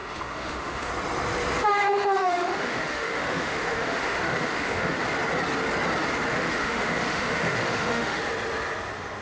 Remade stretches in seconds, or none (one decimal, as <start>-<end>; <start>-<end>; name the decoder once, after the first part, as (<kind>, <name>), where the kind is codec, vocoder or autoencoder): 0.0-0.9 (autoencoder, DAC-VAE); 1.6-5.0; 6.3-8.2